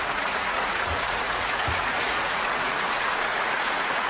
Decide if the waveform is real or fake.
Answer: fake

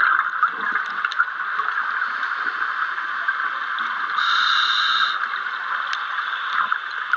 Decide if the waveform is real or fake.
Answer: real